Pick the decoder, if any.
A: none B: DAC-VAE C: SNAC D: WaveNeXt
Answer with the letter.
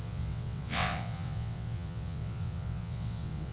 D